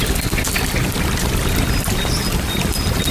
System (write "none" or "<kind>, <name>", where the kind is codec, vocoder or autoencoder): none